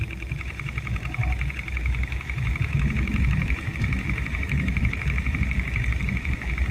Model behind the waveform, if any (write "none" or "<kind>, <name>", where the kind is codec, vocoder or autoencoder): autoencoder, DAC-VAE